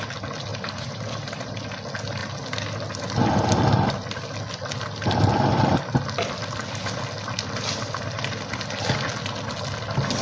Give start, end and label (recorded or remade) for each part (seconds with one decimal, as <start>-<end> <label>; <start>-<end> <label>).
0.0-0.5 recorded; 0.5-1.5 remade; 1.5-10.2 recorded